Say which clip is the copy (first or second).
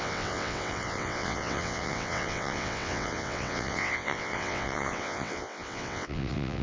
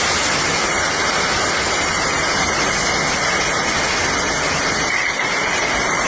first